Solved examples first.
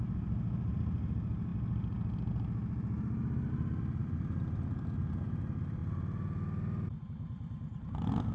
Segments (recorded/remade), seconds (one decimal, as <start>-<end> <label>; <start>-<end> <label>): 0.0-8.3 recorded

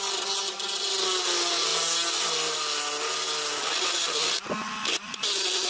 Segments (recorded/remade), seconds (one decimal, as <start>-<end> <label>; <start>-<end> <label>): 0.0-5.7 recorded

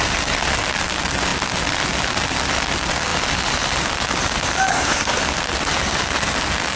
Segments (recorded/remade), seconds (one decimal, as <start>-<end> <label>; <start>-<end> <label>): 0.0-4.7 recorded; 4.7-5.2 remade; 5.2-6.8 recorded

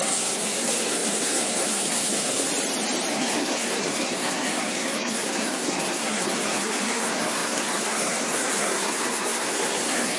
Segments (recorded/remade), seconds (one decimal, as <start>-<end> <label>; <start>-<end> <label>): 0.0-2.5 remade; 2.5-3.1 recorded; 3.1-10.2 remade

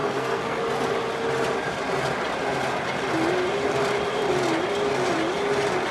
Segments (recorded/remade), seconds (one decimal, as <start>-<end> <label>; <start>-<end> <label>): 0.0-0.6 remade; 0.6-5.9 recorded

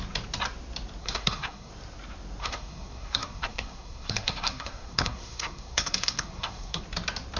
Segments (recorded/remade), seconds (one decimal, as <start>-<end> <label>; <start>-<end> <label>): 0.0-1.0 recorded; 1.0-1.7 remade; 1.7-2.4 recorded; 2.4-6.8 remade; 6.8-7.4 recorded

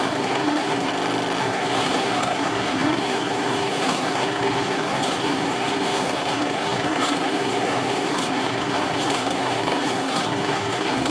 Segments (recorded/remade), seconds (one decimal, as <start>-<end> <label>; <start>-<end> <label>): 0.0-0.9 remade; 0.9-1.4 recorded; 1.4-11.1 remade